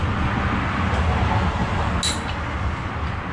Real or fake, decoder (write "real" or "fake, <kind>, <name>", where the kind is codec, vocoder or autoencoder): real